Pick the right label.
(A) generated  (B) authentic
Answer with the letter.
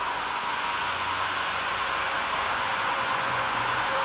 A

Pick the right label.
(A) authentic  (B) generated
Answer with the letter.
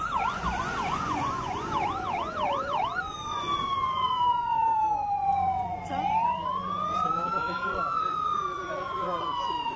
B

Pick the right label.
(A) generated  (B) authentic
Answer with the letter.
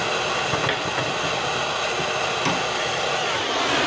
B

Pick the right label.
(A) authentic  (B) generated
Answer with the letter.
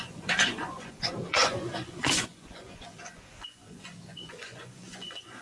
B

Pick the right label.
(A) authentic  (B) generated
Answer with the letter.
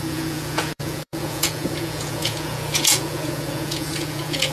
B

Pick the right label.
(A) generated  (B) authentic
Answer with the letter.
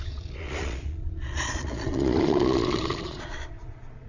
A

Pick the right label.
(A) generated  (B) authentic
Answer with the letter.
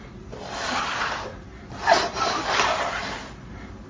B